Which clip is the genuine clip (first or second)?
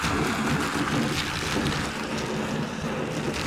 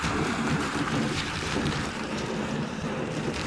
first